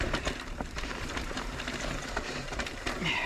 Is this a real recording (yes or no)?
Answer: no